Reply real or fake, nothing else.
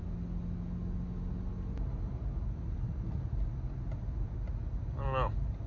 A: real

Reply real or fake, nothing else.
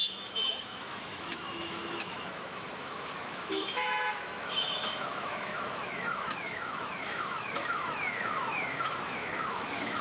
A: fake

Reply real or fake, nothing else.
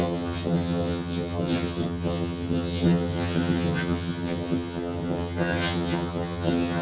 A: fake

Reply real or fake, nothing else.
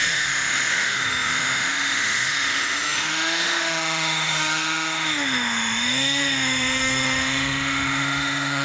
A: fake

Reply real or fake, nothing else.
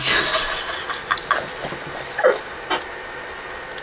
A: real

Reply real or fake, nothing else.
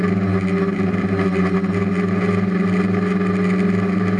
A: real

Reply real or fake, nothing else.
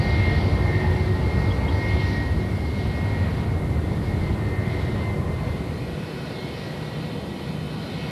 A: real